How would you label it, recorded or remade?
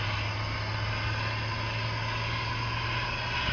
recorded